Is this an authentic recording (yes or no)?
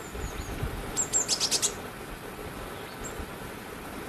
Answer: yes